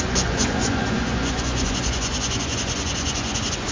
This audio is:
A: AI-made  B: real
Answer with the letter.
A